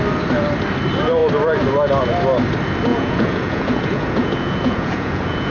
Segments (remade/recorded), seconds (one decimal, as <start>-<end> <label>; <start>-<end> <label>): 0.0-2.9 recorded; 2.9-5.5 remade

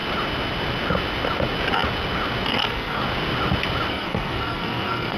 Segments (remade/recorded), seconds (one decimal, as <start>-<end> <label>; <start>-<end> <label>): 0.0-2.5 recorded; 2.5-3.0 remade; 3.0-3.9 recorded; 3.9-5.2 remade

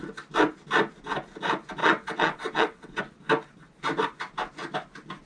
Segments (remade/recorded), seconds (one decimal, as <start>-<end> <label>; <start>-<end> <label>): 0.0-1.8 recorded; 1.8-3.0 remade; 3.0-5.3 recorded

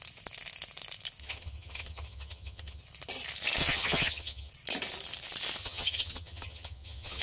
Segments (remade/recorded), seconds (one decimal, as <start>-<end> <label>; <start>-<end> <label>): 0.0-1.2 recorded; 1.2-2.8 remade; 2.8-3.6 recorded; 3.6-4.5 remade; 4.5-5.6 recorded; 5.6-7.2 remade

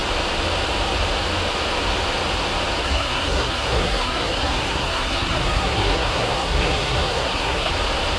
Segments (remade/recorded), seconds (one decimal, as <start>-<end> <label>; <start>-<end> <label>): 0.0-2.8 recorded; 2.8-7.7 remade; 7.7-8.2 recorded

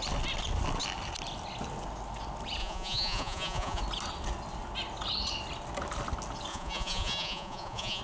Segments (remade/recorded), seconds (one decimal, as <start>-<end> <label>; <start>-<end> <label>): 0.0-2.6 recorded; 2.6-3.8 remade; 3.8-6.5 recorded; 6.5-8.0 remade

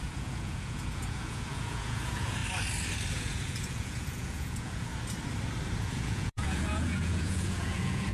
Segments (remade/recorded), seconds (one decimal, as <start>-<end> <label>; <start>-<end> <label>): 0.0-2.4 remade; 2.4-3.1 recorded; 3.1-4.9 remade; 4.9-5.8 recorded; 5.8-8.1 remade

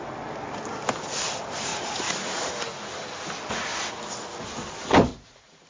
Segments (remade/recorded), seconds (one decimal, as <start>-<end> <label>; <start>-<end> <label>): 0.0-1.7 recorded; 1.7-2.5 remade; 2.5-5.1 recorded; 5.1-5.7 remade